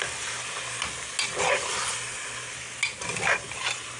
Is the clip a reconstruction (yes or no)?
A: no